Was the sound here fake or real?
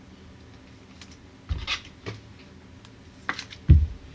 real